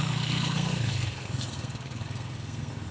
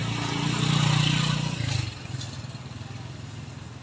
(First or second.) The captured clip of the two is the second